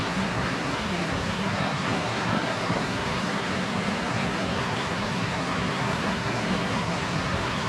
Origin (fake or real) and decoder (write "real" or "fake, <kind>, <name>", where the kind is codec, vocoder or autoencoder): fake, codec, SNAC